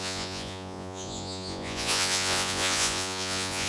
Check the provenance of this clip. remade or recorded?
remade